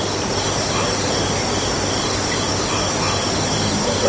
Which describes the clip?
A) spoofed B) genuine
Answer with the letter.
B